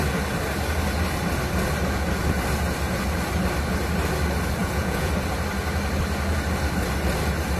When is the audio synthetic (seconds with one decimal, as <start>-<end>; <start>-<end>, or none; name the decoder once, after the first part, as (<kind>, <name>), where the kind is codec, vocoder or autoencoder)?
4.6-5.1 (vocoder, Vocos)